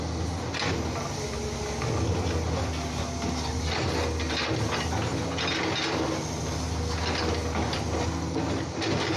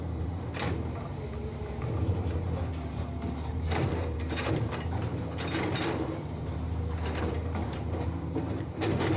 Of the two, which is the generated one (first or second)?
second